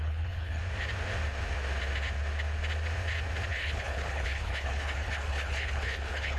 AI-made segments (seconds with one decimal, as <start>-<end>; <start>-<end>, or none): 0.0-0.6; 3.5-6.4